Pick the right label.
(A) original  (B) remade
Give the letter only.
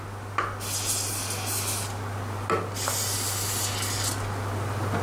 A